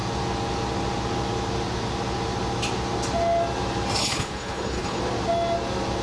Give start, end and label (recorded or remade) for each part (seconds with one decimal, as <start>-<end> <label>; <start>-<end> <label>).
0.0-4.0 recorded; 4.0-5.0 remade; 5.0-6.0 recorded